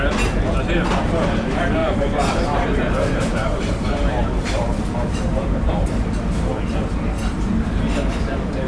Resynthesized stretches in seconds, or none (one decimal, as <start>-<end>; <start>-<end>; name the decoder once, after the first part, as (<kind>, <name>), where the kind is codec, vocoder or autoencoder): 1.8-6.2 (vocoder, BigVGAN v2)

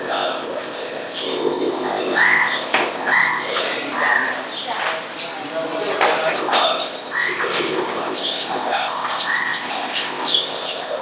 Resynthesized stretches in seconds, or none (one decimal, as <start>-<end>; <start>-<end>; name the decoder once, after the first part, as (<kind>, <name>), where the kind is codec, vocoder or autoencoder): 0.0-3.7 (codec, ZipCodec); 6.3-11.0

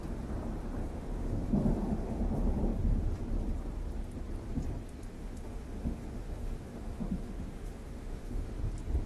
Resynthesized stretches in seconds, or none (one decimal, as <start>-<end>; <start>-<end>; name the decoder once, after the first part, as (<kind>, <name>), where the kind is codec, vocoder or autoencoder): 0.8-2.2 (autoencoder, DAC-VAE); 5.2-8.6

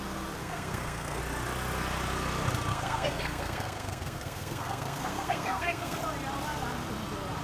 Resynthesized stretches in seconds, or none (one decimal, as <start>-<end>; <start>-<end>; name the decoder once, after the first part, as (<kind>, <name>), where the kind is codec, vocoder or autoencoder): 0.4-1.2 (codec, SNAC); 2.7-6.0

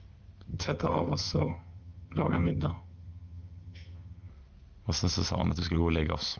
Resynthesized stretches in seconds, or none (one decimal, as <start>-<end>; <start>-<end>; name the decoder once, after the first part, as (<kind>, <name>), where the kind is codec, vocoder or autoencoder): 0.5-4.3 (vocoder, HiFi-GAN)

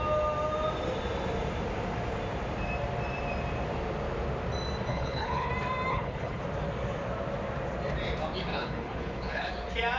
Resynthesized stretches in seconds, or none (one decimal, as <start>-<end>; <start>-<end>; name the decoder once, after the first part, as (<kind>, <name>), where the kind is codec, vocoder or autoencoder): 4.9-5.5 (codec, HILCodec); 5.9-6.4; 8.5-9.5

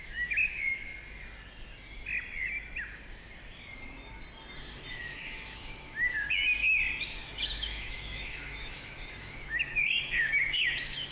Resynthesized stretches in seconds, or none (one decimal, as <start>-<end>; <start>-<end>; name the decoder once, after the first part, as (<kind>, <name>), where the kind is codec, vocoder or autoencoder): 0.0-0.9 (autoencoder, DAC-VAE); 4.9-6.4; 7.0-11.1